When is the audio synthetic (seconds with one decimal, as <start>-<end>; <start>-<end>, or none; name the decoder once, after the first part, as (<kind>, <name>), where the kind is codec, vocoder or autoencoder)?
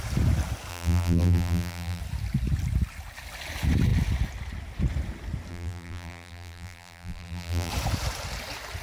0.7-2.0 (vocoder, BigVGAN v2); 5.5-7.7